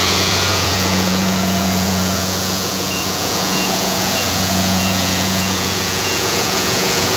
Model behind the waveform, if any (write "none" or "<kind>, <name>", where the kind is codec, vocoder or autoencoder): vocoder, Vocos